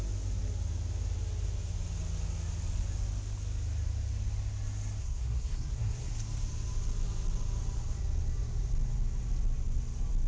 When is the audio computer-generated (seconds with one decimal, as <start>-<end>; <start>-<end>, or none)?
5.0-6.1